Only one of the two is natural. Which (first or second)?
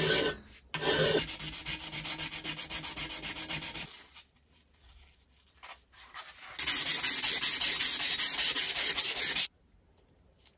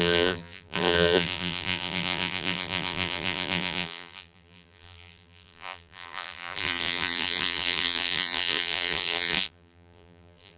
first